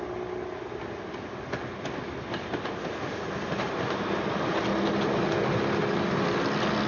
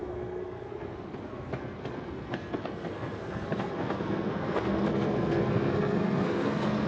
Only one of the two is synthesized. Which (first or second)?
second